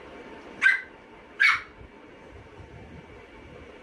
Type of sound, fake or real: real